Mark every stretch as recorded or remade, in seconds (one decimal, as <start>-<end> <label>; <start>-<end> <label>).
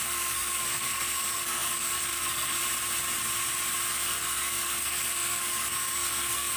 0.0-2.6 remade; 2.6-3.9 recorded; 3.9-6.6 remade